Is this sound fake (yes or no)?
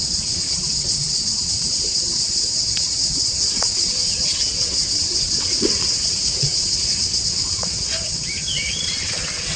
yes